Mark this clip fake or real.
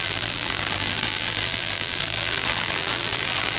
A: fake